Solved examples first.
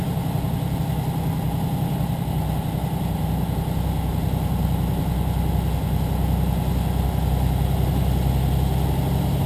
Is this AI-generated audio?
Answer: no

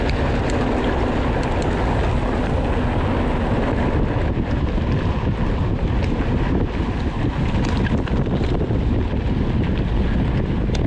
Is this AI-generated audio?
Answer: no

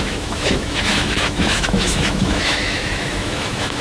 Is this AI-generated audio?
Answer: yes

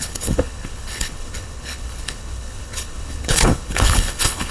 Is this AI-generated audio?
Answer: yes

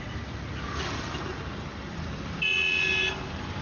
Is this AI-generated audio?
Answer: no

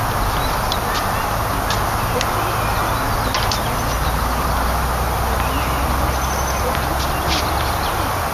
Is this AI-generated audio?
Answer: no